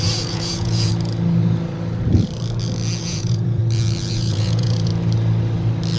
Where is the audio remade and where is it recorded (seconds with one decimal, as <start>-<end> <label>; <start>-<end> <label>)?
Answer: 0.0-0.9 remade; 0.9-3.0 recorded; 3.0-3.6 remade; 3.6-4.1 recorded; 4.1-4.9 remade; 4.9-6.0 recorded